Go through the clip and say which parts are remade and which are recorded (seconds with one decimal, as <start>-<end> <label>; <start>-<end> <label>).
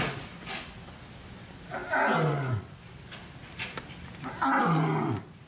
0.0-5.5 recorded